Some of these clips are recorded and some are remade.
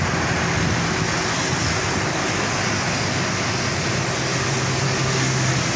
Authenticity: recorded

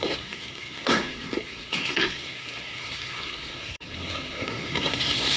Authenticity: remade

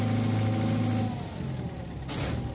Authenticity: recorded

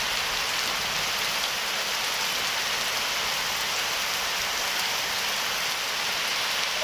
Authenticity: recorded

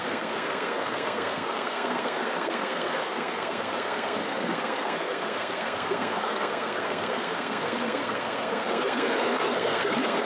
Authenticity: remade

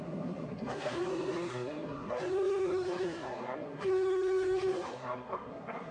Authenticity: remade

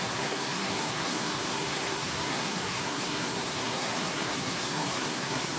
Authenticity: remade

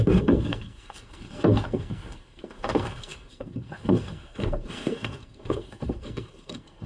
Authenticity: remade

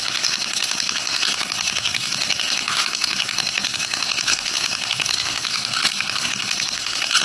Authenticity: remade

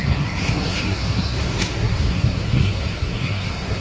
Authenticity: remade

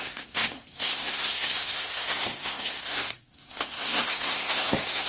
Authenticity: remade